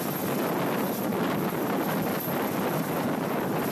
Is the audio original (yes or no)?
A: yes